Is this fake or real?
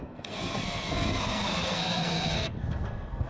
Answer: fake